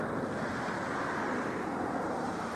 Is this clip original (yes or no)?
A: yes